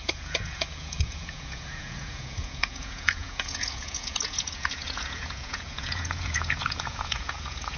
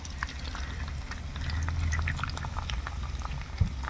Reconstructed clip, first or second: first